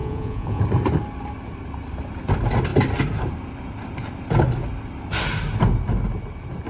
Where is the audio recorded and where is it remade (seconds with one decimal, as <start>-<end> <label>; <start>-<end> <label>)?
0.0-0.6 remade; 0.6-6.7 recorded